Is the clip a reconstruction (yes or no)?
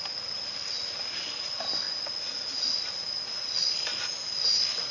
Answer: no